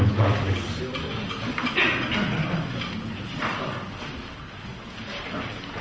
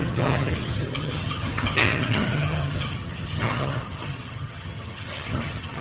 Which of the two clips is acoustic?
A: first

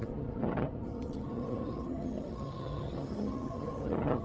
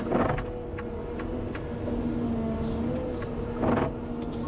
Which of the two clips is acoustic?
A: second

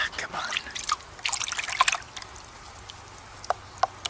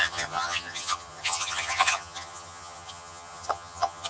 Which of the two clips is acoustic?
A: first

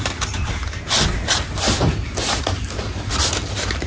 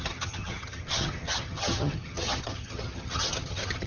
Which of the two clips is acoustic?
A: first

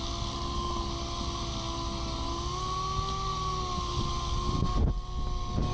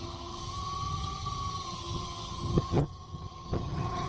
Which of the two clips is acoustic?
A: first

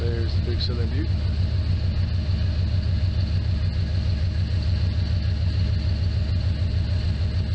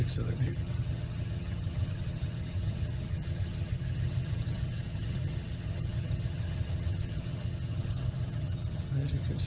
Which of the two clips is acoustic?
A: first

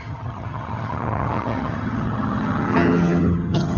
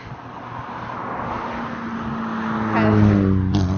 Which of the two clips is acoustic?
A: second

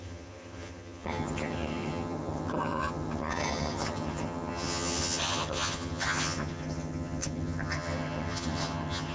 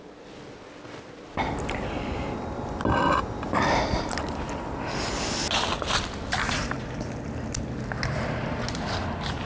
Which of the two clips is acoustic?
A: second